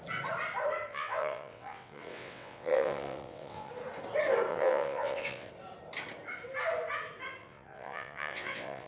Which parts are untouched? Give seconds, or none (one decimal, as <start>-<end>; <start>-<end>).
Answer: 0.0-0.9; 3.7-4.5; 5.5-7.4